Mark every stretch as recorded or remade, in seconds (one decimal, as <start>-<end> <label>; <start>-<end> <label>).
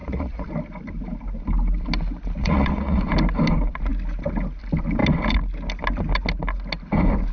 0.0-0.5 remade; 0.5-2.4 recorded; 2.4-3.0 remade; 3.0-7.3 recorded